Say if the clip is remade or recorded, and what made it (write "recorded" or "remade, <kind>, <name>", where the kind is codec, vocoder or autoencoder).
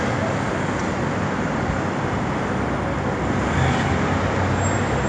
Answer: recorded